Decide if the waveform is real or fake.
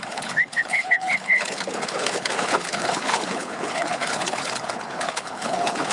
fake